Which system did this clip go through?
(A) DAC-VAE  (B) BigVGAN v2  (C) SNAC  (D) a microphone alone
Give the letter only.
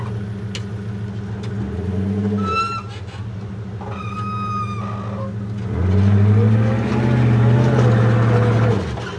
D